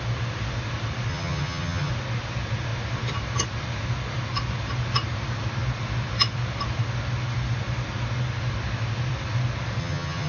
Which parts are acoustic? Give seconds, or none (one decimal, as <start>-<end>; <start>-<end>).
0.0-1.1; 1.9-9.8